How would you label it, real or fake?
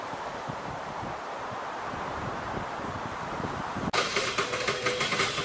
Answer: fake